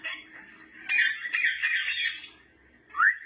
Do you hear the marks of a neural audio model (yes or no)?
no